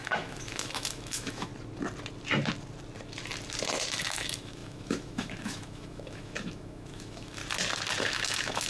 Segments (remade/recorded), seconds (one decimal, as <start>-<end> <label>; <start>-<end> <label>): 0.0-1.5 remade; 1.5-4.0 recorded; 4.0-7.4 remade; 7.4-8.0 recorded; 8.0-8.7 remade